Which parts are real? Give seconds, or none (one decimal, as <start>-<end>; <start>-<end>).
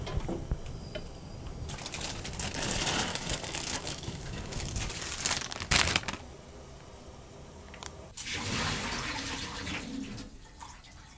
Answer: 0.0-3.1; 4.8-11.2